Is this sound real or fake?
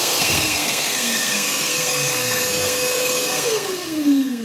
fake